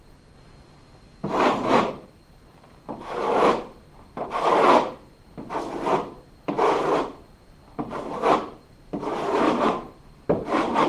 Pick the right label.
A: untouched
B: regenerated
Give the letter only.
B